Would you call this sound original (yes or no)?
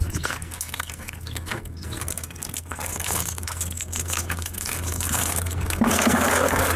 no